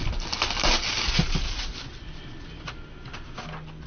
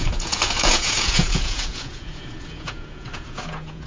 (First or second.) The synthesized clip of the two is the second